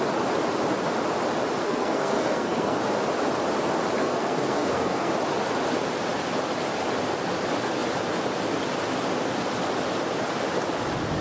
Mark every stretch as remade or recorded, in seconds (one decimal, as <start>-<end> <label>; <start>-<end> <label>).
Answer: 0.0-1.6 recorded; 1.6-2.8 remade; 2.8-4.0 recorded; 4.0-5.1 remade; 5.1-11.2 recorded